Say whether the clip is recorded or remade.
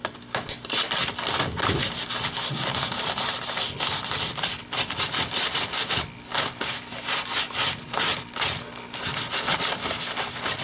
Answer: recorded